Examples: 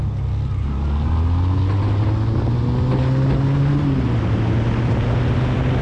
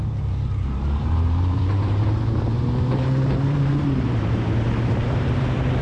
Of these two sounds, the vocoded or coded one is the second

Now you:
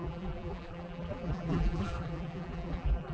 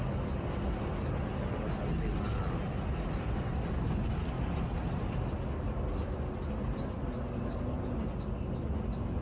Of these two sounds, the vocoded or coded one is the first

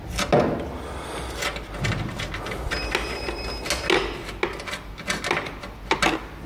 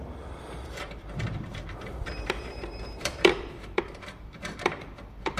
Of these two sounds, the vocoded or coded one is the second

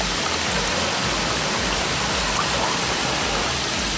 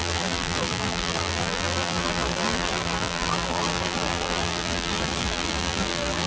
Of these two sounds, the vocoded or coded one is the second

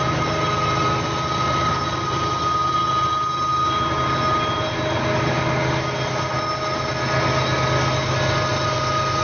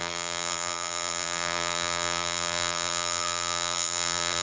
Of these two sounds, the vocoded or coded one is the second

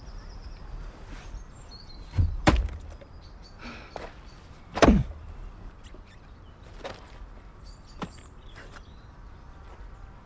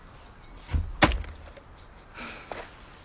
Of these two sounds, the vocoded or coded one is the first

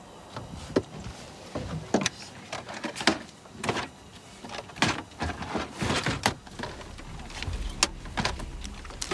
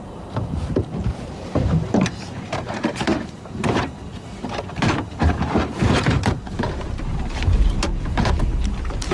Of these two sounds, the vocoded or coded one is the second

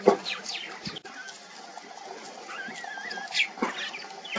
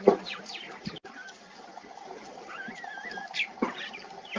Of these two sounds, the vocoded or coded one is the second